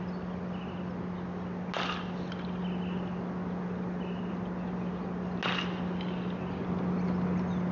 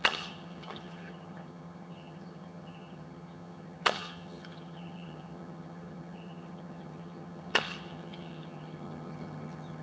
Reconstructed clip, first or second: second